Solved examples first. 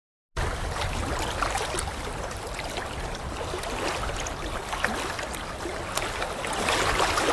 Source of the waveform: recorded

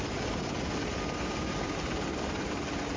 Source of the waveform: recorded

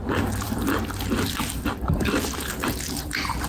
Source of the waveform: remade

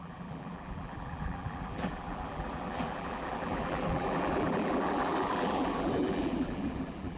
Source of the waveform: remade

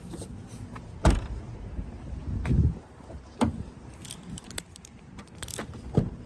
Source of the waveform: remade